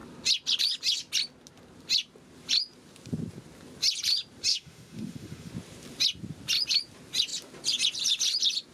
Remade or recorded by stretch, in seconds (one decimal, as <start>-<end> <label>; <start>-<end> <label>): 0.0-4.5 recorded; 4.5-5.5 remade; 5.5-8.7 recorded